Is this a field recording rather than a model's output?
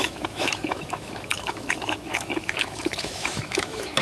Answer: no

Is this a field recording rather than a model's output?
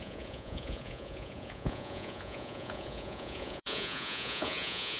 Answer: no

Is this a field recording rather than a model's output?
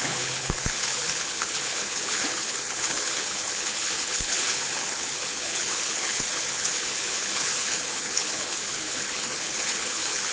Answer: no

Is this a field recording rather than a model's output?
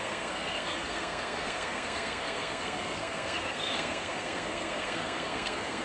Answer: no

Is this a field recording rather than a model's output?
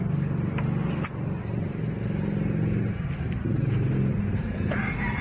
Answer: yes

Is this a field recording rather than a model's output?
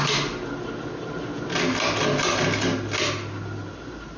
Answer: yes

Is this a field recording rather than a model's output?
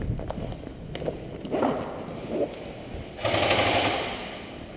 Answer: yes